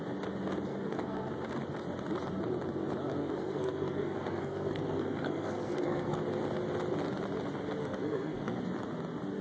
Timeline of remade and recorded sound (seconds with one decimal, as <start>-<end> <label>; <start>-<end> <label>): 0.0-0.7 recorded; 0.7-1.3 remade; 1.3-3.2 recorded; 3.2-6.2 remade; 6.2-7.8 recorded; 7.8-8.6 remade; 8.6-9.4 recorded

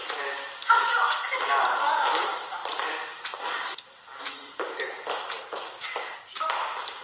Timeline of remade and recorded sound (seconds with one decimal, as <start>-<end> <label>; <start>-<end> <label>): 0.0-7.0 recorded